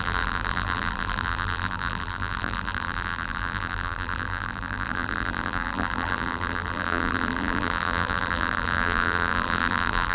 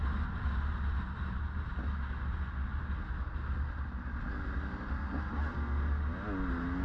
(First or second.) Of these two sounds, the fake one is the first